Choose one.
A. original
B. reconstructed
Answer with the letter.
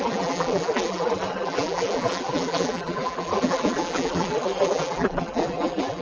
B